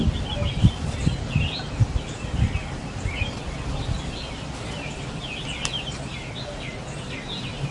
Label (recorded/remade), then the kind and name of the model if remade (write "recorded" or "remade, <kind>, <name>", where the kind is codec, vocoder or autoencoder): recorded